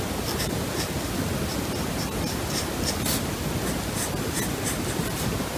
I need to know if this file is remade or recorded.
recorded